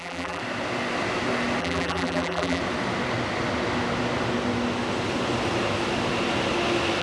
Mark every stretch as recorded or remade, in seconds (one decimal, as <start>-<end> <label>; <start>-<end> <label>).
0.0-0.4 remade; 0.4-1.6 recorded; 1.6-2.6 remade; 2.6-7.0 recorded